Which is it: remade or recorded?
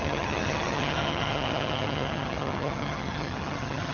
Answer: remade